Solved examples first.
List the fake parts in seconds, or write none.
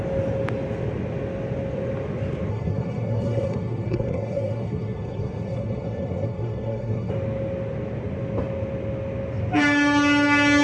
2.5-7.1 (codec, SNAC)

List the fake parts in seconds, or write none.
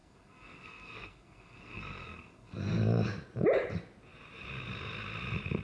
0.0-2.8 (codec, SNAC)